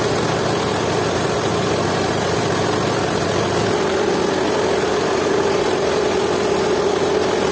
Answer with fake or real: real